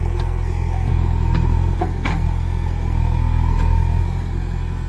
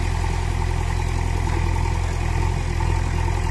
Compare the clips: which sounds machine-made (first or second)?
first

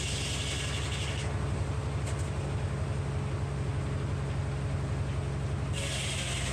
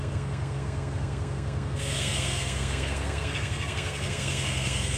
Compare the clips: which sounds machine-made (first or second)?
second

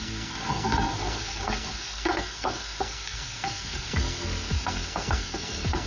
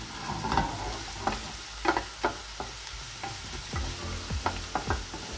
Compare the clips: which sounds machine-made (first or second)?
first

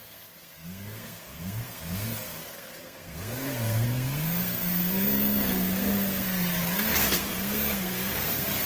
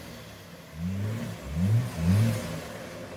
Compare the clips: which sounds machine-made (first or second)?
first